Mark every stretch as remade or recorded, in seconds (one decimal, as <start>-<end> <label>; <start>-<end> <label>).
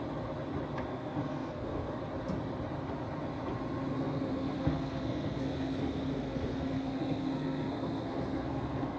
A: 0.0-0.9 recorded; 0.9-2.0 remade; 2.0-3.9 recorded; 3.9-9.0 remade